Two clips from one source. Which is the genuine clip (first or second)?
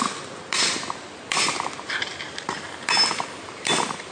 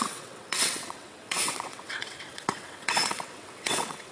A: first